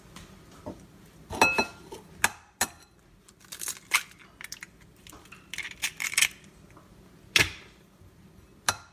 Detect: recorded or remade recorded